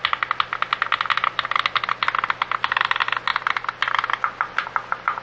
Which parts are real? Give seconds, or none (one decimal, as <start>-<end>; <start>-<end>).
0.0-5.2